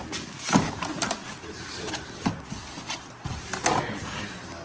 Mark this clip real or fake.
fake